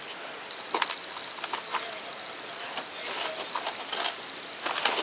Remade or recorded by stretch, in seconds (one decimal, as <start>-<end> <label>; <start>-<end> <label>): 0.0-5.0 recorded